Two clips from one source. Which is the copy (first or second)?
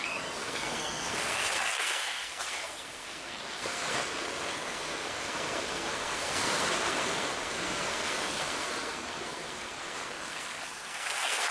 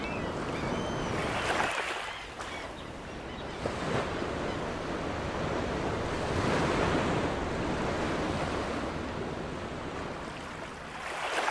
first